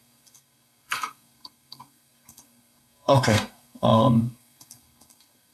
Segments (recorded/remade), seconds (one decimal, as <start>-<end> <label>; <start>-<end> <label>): 0.0-5.5 remade